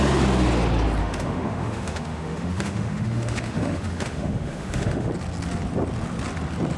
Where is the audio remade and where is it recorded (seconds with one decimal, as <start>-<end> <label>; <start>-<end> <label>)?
0.0-1.0 recorded; 1.0-5.1 remade; 5.1-6.8 recorded